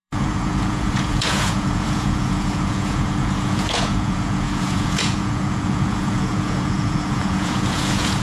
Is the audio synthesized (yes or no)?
yes